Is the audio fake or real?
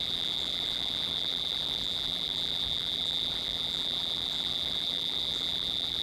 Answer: fake